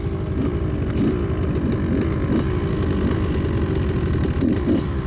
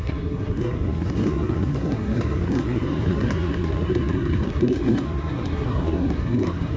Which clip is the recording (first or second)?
first